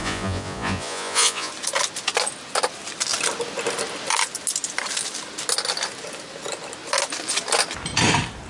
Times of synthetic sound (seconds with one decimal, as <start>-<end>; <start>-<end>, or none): 0.0-1.5